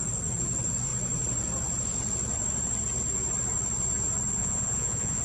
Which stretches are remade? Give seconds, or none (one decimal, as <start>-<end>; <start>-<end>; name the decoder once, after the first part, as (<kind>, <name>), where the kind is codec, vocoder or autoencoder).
4.4-5.2 (vocoder, Vocos)